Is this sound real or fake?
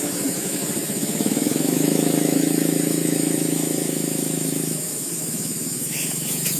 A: fake